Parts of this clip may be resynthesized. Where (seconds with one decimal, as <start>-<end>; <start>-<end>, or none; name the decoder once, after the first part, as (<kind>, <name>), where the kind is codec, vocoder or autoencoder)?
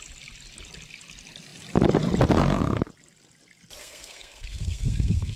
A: 3.8-5.4 (codec, SNAC)